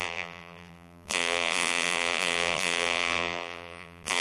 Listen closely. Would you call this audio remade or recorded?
remade